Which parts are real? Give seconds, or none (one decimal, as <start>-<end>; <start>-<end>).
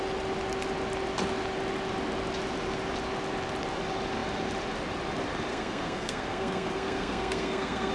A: 0.0-5.5